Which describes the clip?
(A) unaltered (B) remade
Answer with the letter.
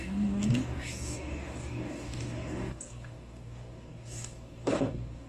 B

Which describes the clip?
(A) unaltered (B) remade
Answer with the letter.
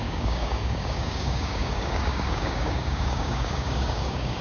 B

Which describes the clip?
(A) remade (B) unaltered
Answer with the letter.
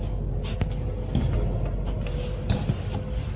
B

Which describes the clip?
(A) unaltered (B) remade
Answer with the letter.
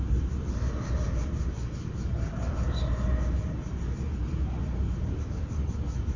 A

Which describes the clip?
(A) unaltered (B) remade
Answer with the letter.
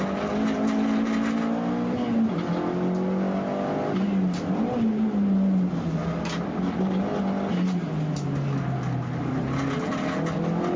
A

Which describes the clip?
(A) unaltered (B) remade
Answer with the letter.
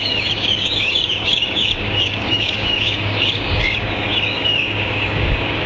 B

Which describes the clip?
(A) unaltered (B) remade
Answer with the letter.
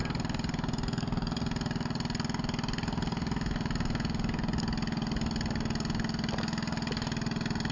A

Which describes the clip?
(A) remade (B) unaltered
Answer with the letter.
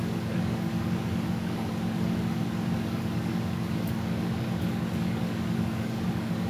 A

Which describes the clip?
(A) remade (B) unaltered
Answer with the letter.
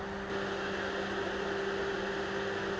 B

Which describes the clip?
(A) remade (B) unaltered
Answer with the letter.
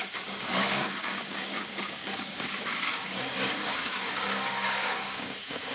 A